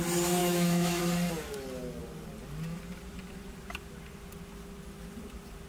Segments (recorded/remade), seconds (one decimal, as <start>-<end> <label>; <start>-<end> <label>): 0.0-0.4 recorded; 0.4-1.0 remade; 1.0-5.7 recorded